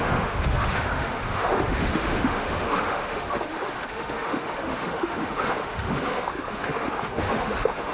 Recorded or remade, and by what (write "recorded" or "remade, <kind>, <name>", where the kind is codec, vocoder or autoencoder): remade, autoencoder, DAC-VAE